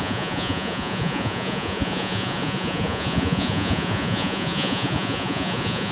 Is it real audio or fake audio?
fake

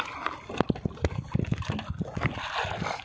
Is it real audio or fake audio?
real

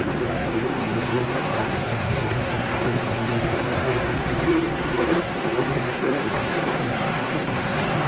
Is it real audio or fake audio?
fake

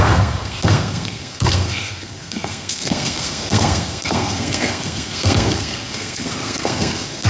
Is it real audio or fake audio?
fake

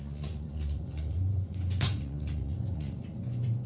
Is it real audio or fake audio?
fake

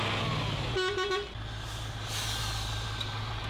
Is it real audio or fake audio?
real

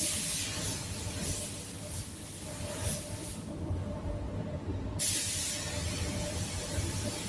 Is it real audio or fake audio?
real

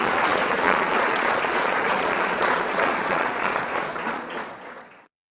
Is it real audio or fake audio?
fake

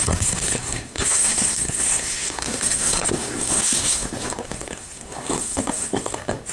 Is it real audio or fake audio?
fake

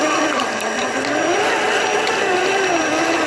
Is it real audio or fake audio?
real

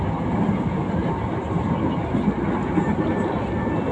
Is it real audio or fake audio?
real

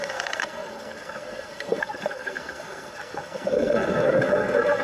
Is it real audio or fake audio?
fake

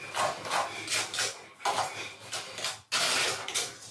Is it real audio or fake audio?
real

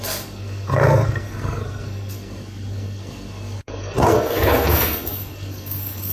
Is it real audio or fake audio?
fake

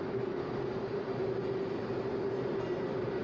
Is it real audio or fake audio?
real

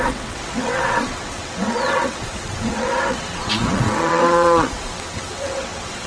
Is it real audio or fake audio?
fake